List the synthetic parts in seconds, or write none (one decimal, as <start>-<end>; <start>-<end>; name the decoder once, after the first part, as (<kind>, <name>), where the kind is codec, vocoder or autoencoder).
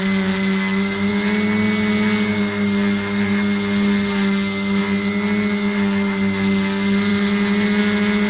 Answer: none